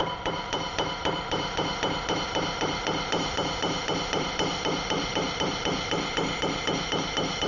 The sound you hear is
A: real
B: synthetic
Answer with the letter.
B